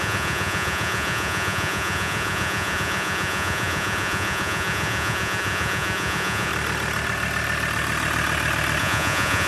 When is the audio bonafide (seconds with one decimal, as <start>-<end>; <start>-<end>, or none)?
6.5-8.8